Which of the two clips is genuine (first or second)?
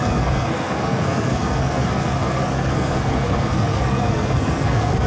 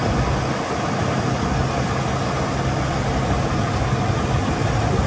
second